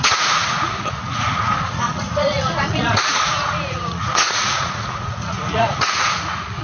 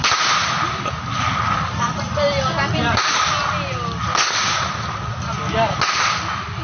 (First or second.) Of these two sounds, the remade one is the first